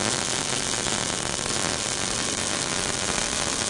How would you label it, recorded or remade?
recorded